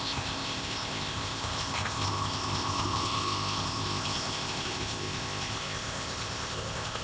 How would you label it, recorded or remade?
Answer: remade